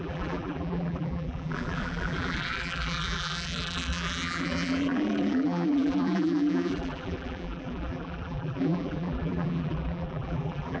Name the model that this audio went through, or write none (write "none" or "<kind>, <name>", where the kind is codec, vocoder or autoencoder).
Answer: vocoder, BigVGAN v2